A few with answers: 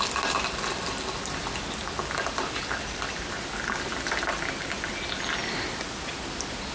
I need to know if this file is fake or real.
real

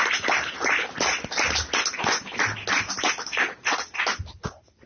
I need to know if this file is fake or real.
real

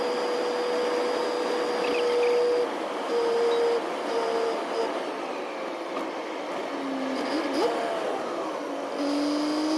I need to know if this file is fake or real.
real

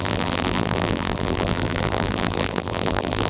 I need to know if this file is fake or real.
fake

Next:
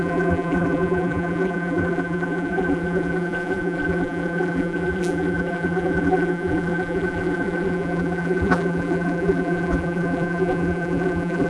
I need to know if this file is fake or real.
fake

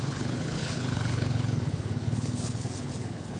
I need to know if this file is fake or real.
fake